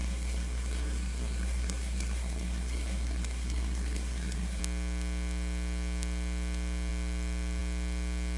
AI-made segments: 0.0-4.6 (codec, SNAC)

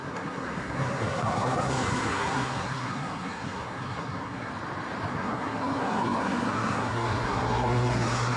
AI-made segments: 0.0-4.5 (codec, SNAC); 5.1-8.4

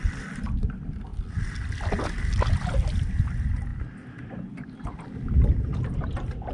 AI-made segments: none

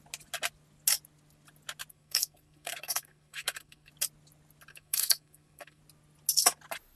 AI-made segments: 1.9-3.9 (codec, SNAC); 4.7-5.8